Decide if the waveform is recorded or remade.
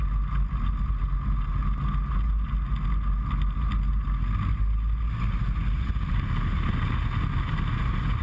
recorded